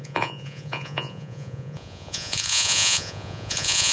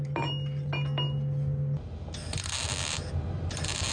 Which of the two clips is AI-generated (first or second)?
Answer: first